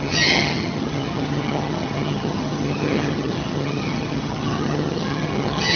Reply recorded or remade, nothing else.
remade